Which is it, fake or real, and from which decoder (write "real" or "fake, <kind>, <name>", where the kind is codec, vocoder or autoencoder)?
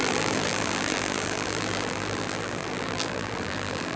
fake, vocoder, BigVGAN v2